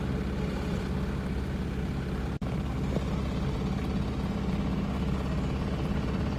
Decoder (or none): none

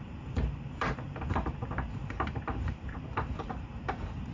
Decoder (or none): vocoder, BigVGAN v2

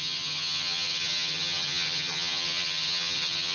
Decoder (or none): vocoder, HiFi-GAN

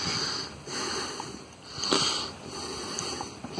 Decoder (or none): none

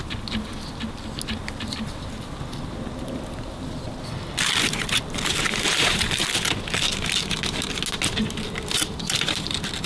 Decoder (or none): none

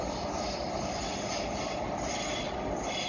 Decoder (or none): none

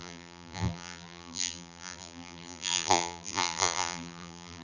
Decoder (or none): vocoder, BigVGAN v2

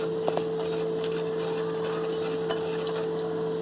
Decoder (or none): none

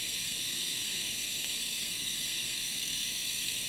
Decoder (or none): codec, SNAC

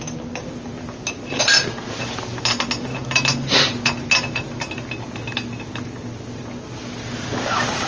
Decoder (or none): none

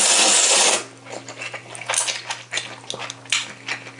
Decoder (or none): none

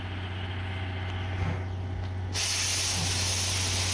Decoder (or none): none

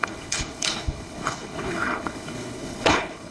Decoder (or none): codec, HILCodec